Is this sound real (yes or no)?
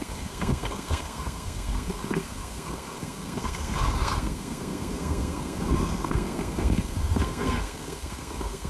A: no